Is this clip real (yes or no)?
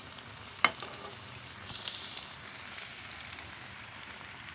yes